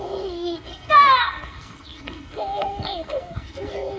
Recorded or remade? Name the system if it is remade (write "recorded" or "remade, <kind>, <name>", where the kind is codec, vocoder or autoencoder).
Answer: remade, codec, SNAC